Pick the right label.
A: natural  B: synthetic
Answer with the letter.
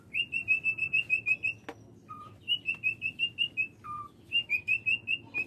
A